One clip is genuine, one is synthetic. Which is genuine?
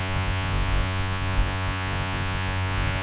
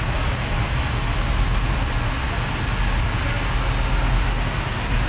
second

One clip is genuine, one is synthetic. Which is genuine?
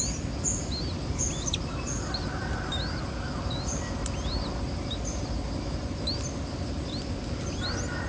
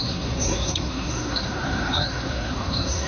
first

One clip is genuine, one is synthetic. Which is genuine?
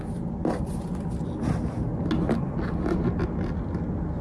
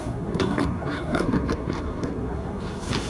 first